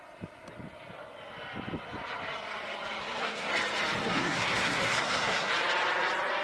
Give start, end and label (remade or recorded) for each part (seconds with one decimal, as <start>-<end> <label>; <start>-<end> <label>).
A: 0.0-3.0 recorded; 3.0-3.5 remade; 3.5-4.0 recorded; 4.0-5.5 remade; 5.5-6.4 recorded